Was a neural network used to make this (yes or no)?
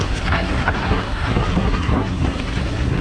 yes